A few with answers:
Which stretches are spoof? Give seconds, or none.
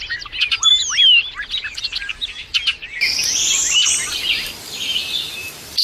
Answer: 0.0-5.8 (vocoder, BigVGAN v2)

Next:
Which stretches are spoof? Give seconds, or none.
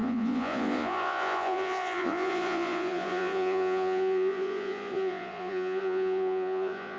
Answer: 0.0-7.0 (vocoder, Vocos)